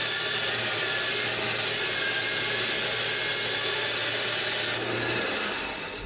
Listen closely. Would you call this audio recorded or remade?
recorded